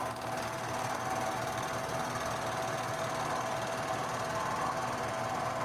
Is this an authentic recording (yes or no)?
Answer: yes